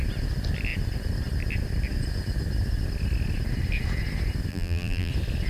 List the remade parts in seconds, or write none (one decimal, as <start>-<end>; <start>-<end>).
4.5-5.1